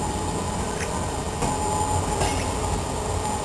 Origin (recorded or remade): recorded